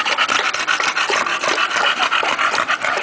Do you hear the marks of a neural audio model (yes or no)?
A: no